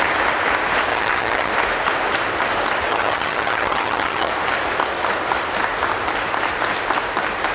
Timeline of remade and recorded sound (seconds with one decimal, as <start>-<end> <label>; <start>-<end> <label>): 0.0-0.9 recorded; 0.9-1.5 remade; 1.5-2.9 recorded; 2.9-4.3 remade; 4.3-7.5 recorded